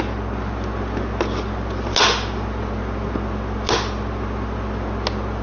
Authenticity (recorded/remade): recorded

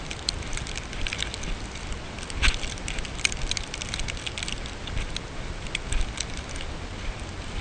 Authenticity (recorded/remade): recorded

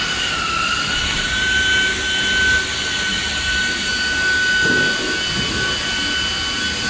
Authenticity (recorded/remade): recorded